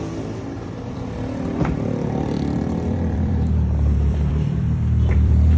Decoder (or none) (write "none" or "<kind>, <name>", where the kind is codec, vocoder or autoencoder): vocoder, BigVGAN v2